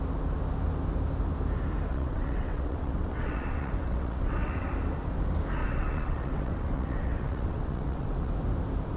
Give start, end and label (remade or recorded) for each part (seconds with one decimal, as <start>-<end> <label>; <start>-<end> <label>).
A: 0.0-1.9 recorded; 1.9-4.7 remade; 4.7-5.6 recorded; 5.6-8.3 remade; 8.3-9.0 recorded